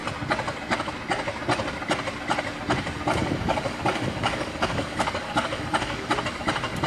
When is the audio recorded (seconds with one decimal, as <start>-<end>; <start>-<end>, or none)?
0.0-3.2; 6.1-6.9